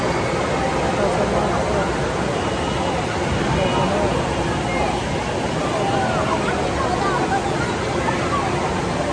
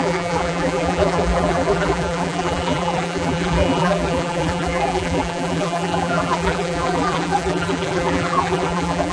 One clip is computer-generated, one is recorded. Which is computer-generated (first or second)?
second